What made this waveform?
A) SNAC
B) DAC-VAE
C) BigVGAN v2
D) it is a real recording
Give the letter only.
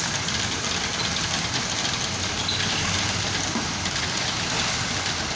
D